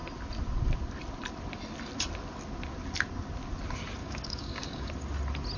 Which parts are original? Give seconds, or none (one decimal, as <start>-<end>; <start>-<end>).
0.0-4.0; 4.9-5.6